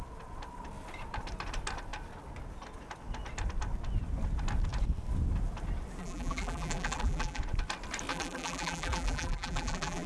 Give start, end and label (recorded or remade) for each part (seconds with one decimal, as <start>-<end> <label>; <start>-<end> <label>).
0.0-6.0 recorded; 6.0-7.4 remade; 7.4-8.1 recorded; 8.1-10.1 remade